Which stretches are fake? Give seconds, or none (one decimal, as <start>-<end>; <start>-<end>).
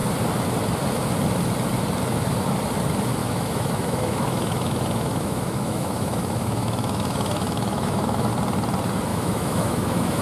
3.2-8.3; 9.1-10.2